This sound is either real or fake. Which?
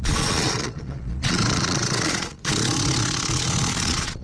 fake